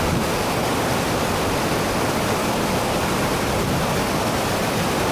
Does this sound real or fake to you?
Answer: real